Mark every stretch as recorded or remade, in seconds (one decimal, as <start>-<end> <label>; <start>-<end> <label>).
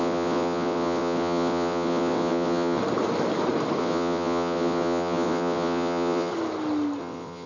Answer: 0.0-2.8 remade; 2.8-3.8 recorded; 3.8-6.3 remade; 6.3-7.0 recorded; 7.0-7.5 remade